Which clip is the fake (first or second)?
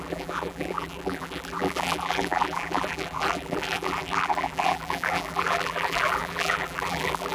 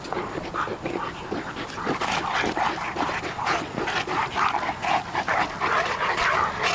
first